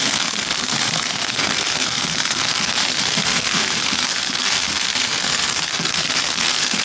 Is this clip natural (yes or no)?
no